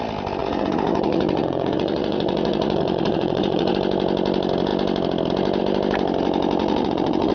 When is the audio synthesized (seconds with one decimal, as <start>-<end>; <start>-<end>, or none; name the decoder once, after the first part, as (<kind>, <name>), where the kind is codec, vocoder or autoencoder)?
0.4-3.7 (vocoder, Vocos); 6.6-7.3